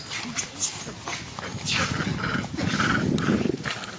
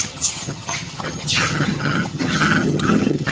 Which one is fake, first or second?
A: second